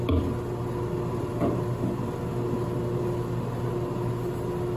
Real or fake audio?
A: real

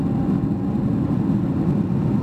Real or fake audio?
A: real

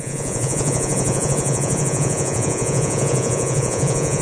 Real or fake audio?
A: fake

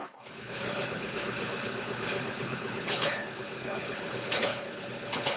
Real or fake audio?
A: fake